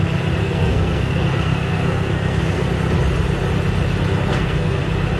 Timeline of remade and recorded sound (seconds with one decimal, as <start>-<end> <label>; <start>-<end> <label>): 0.0-0.4 recorded; 0.4-2.7 remade; 2.7-4.3 recorded; 4.3-4.8 remade; 4.8-5.2 recorded